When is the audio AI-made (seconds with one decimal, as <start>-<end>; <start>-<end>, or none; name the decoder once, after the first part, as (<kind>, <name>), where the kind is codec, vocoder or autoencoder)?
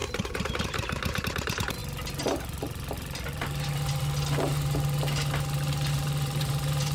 0.0-1.8 (vocoder, BigVGAN v2); 5.9-6.9